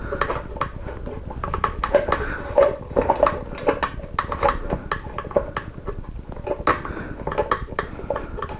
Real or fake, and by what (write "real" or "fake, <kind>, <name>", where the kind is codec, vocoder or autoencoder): real